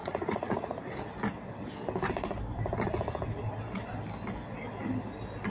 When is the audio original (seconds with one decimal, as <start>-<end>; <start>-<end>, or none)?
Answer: 0.8-5.5